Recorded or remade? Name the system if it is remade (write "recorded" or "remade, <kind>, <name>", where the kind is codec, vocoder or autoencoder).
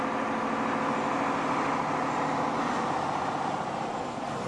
recorded